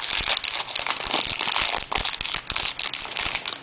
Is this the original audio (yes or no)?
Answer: yes